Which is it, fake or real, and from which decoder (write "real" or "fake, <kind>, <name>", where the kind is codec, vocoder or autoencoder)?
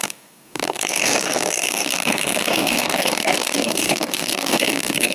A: fake, codec, DAC